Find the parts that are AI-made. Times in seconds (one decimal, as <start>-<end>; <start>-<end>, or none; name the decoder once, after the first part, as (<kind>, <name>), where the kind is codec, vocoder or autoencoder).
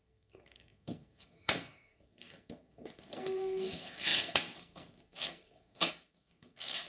0.0-6.9 (codec, SNAC)